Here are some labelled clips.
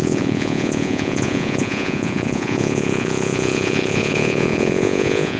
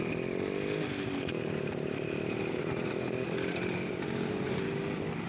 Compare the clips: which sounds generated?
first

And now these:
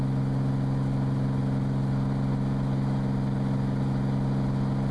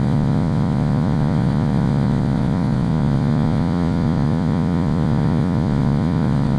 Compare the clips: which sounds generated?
second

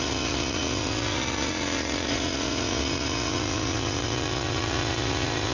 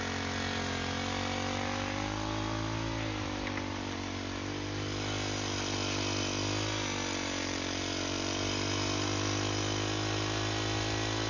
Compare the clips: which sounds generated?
first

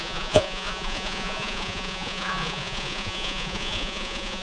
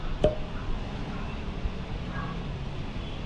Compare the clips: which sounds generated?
first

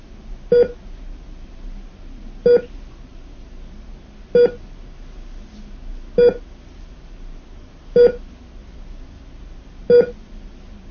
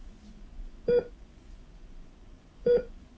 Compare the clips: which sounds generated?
second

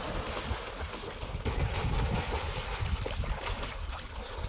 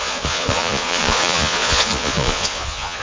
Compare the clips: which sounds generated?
second